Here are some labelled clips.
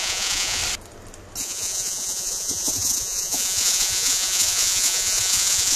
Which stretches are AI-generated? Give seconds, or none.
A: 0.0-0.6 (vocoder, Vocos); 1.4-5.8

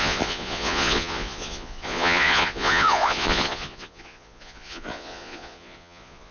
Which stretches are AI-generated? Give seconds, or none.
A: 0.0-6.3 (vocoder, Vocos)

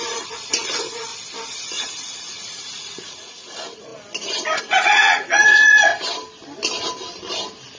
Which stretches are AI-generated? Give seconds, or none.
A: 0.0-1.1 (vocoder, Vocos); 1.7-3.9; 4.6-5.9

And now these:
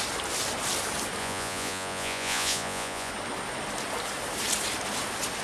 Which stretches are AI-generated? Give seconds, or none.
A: 1.2-3.1 (vocoder, Vocos)

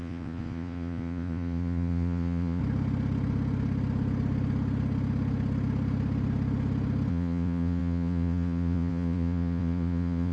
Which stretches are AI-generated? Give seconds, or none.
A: 0.0-2.6 (vocoder, Vocos); 7.1-10.3

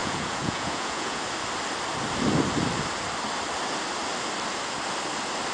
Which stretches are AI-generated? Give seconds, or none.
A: 0.0-1.2 (vocoder, Vocos)

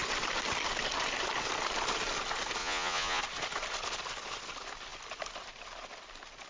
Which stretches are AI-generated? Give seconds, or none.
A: 2.6-3.2 (vocoder, Vocos)

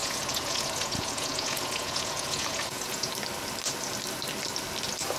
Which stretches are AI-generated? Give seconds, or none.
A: 0.0-3.1 (vocoder, Vocos)